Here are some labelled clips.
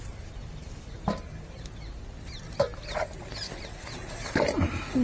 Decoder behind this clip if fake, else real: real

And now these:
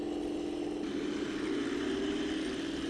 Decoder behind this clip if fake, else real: real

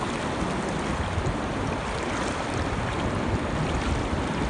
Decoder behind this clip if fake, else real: real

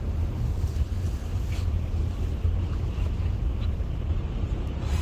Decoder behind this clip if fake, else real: real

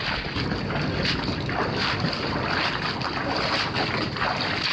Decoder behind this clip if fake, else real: real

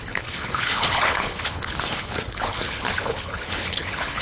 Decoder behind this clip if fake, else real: fake, codec, HILCodec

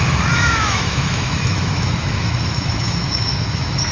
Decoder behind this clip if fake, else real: fake, autoencoder, DAC-VAE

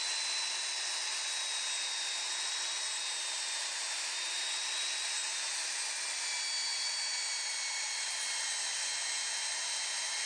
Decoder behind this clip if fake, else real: real